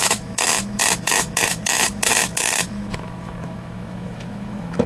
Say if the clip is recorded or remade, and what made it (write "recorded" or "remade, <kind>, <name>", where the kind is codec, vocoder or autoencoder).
remade, autoencoder, DAC-VAE